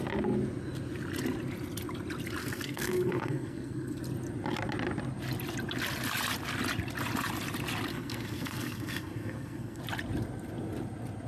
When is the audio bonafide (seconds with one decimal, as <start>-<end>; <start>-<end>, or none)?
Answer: 0.0-2.4; 4.0-7.9; 9.8-11.3